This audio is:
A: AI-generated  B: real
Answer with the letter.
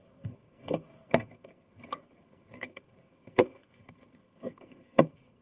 A